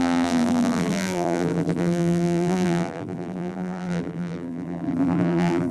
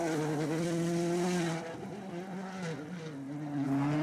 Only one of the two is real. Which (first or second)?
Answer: second